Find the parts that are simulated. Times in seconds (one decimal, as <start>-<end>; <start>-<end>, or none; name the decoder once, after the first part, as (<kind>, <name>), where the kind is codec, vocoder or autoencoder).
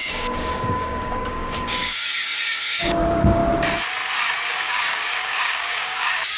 0.0-3.4 (codec, DAC); 4.5-6.4